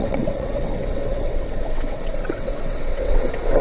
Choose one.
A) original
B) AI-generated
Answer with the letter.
B